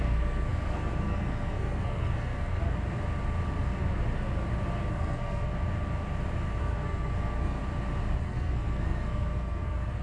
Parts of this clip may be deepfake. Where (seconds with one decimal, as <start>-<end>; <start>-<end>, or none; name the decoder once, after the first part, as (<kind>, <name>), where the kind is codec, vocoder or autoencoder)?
0.0-2.6 (codec, SNAC); 4.9-5.5; 6.6-7.6; 8.2-10.0